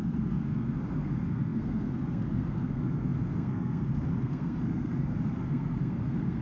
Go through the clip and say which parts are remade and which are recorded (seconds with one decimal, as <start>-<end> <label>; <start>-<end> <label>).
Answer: 0.0-6.4 remade